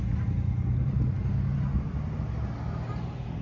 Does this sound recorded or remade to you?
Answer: recorded